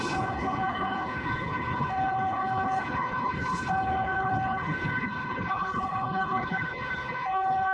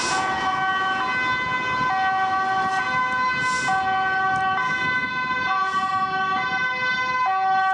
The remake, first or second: first